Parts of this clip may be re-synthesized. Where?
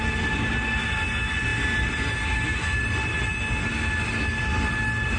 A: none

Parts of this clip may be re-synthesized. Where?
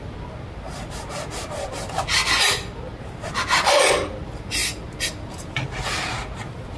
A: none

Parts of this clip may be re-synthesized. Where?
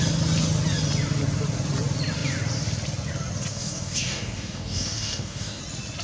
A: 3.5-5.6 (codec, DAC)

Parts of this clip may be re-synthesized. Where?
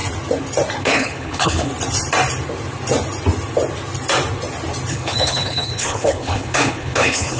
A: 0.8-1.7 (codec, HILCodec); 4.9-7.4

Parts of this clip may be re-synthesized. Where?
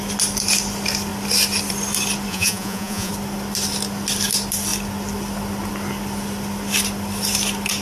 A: 2.3-3.1 (vocoder, Vocos)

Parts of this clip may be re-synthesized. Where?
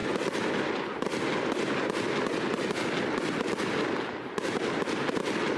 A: none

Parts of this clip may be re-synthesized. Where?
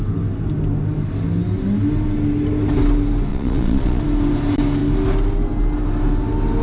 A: 3.3-4.0 (vocoder, Vocos)